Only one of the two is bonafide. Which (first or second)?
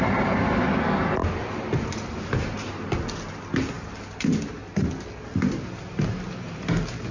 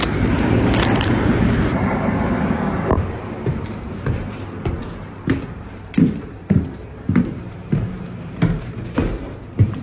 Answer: first